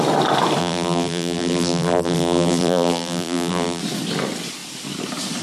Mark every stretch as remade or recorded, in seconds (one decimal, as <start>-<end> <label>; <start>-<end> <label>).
0.0-0.6 recorded; 0.6-3.8 remade; 3.8-5.4 recorded

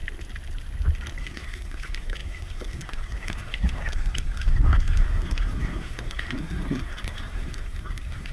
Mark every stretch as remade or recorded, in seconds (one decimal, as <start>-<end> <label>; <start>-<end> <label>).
0.0-1.2 recorded; 1.2-8.3 remade

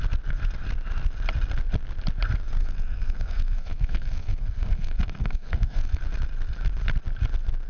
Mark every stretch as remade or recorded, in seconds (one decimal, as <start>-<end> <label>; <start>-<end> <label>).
0.0-2.6 recorded; 2.6-6.0 remade; 6.0-7.7 recorded

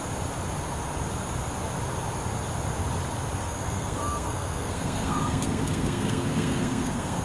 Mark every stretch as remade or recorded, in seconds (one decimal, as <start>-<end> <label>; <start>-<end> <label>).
0.0-3.4 recorded; 3.4-7.2 remade